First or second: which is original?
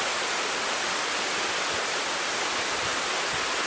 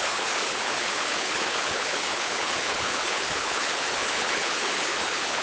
first